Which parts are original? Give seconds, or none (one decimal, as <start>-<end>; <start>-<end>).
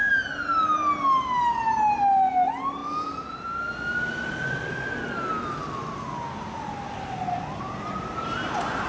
0.0-8.9